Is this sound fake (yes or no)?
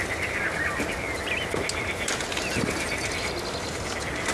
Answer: no